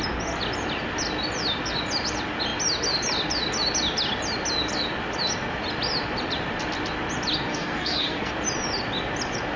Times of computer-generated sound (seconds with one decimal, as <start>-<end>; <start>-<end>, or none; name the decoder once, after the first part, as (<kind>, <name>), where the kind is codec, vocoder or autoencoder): 7.5-8.3 (codec, SNAC)